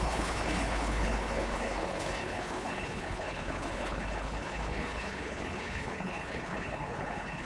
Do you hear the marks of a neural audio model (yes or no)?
yes